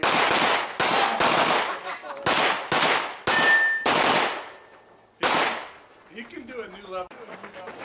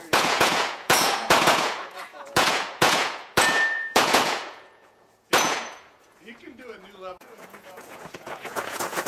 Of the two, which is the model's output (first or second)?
second